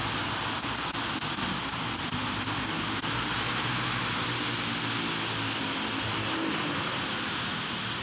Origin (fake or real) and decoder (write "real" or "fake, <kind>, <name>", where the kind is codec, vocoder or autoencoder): real